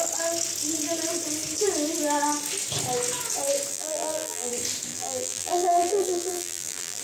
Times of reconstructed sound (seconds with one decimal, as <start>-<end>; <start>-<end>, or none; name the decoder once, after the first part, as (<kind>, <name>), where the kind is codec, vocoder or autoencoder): 3.7-4.5 (vocoder, BigVGAN v2); 4.9-7.0

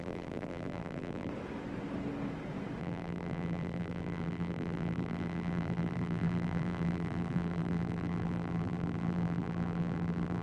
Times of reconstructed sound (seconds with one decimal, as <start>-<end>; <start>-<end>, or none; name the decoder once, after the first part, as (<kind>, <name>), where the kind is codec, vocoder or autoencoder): 0.0-1.3 (vocoder, BigVGAN v2); 2.8-10.4

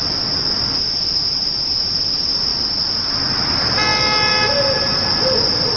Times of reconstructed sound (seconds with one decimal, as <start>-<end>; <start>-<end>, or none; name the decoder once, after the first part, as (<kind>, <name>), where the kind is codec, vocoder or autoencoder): none

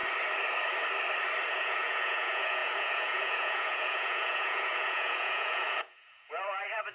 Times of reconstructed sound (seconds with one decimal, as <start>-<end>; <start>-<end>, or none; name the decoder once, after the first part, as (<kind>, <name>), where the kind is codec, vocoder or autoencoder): 1.5-6.9 (vocoder, Vocos)

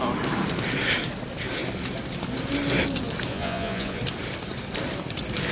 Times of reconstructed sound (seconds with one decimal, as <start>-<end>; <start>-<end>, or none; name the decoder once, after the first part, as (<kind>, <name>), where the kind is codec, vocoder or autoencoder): 3.3-4.0 (vocoder, Vocos)